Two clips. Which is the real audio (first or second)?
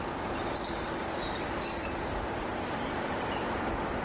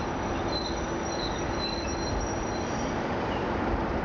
second